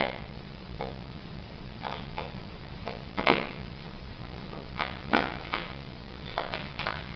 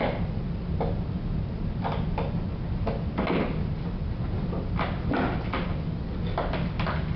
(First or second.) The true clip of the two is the second